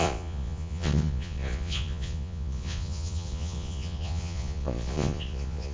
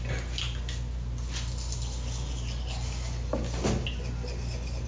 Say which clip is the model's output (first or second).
first